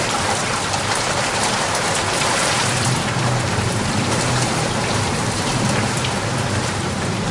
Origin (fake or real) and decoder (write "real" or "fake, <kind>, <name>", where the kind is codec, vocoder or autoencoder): fake, vocoder, BigVGAN v2